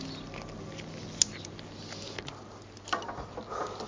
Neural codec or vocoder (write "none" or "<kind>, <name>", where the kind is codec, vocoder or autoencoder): none